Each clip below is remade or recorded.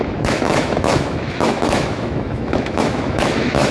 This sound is remade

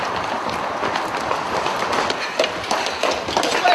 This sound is recorded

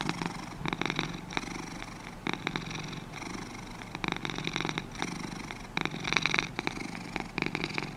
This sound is recorded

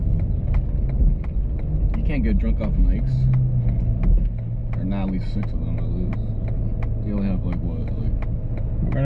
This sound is recorded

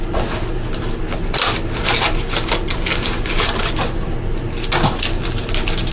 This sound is recorded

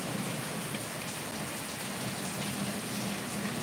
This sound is recorded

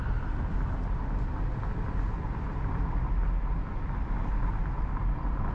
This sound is recorded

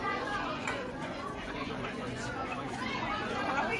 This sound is remade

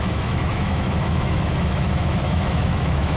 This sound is remade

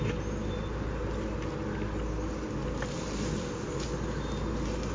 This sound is recorded